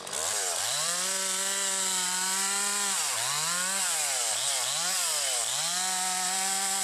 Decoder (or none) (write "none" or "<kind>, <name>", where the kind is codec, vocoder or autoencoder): vocoder, BigVGAN v2